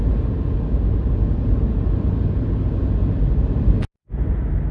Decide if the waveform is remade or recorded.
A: recorded